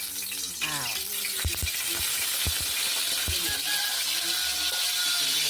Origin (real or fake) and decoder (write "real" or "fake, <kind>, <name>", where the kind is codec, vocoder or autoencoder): real